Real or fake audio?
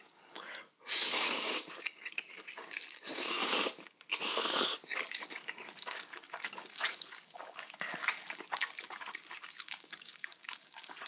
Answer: fake